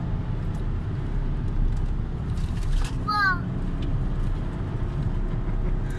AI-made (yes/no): no